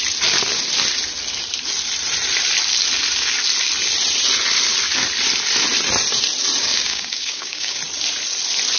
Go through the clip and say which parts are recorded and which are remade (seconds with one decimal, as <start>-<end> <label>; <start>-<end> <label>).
0.0-6.6 recorded; 6.6-7.8 remade; 7.8-8.8 recorded

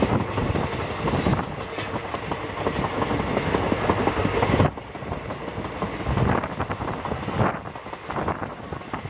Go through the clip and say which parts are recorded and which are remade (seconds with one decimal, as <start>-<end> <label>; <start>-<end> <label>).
0.0-9.1 recorded